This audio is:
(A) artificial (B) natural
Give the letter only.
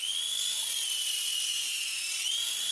B